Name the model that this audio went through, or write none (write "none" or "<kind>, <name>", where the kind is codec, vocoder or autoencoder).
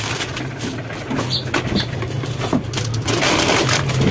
none